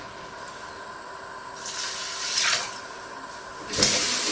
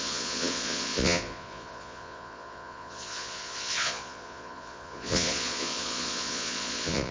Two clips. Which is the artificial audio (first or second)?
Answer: second